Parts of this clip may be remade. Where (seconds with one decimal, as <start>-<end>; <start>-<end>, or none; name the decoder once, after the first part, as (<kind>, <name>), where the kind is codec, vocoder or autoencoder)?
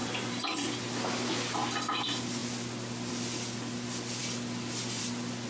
4.2-5.0 (vocoder, BigVGAN v2)